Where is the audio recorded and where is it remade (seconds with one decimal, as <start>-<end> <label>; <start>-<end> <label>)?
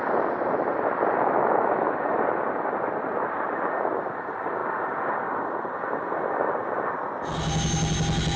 0.0-8.4 recorded